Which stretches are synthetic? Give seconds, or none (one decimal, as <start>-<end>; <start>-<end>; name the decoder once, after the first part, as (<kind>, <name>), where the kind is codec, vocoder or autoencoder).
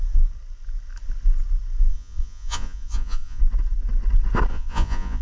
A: 1.9-3.4 (vocoder, Vocos); 4.5-5.2